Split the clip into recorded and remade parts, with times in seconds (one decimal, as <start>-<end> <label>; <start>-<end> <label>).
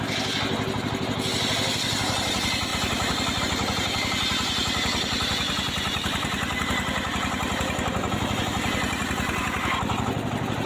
0.0-2.7 recorded; 2.7-3.4 remade; 3.4-10.7 recorded